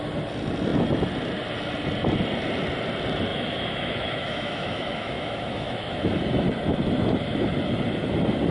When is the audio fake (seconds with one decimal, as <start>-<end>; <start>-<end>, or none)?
3.3-6.2